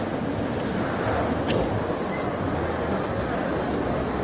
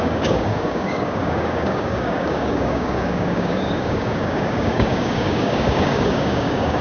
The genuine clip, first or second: first